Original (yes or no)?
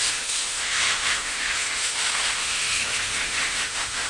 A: no